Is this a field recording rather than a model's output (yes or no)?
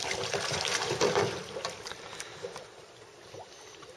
no